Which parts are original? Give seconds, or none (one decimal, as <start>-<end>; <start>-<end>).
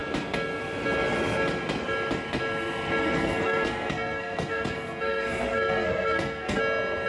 0.0-3.0; 6.6-7.1